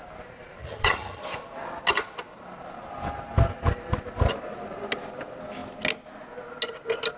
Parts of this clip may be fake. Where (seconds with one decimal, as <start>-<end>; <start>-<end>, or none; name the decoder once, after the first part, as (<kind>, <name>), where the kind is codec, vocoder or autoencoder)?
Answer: 0.6-1.2 (vocoder, HiFi-GAN)